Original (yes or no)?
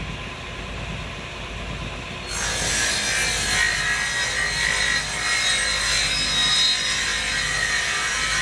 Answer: yes